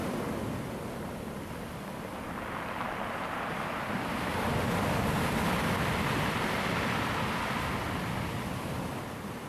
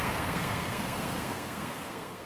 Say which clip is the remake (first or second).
second